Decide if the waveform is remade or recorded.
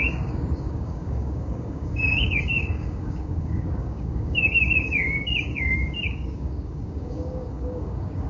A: remade